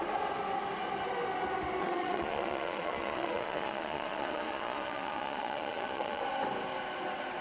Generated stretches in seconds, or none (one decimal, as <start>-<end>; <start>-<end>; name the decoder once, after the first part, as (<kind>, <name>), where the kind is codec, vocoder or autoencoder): 1.8-6.2 (vocoder, Vocos)